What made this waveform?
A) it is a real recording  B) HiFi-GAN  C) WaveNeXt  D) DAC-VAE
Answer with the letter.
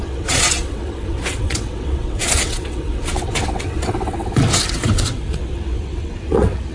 C